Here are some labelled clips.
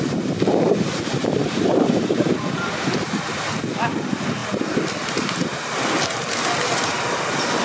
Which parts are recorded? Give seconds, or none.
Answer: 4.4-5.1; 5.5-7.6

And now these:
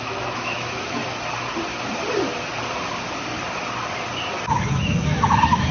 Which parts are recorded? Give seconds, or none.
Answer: 1.0-4.4

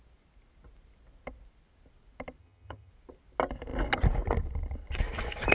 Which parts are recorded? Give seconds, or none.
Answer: 0.0-2.4; 2.9-5.5

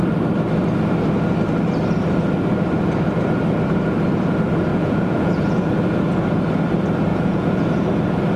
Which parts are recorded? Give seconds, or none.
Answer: 0.0-4.7; 5.7-7.1; 7.7-8.4

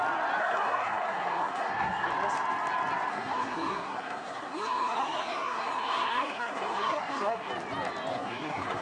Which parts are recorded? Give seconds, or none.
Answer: 0.0-0.4; 2.1-3.1; 7.5-8.1

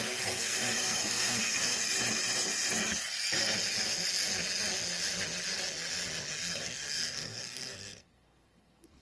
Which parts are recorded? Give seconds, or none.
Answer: 1.7-6.3